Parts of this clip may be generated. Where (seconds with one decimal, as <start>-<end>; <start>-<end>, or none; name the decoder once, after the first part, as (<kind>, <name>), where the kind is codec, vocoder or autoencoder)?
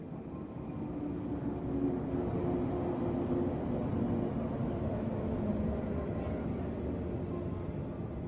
4.6-5.5 (autoencoder, DAC-VAE)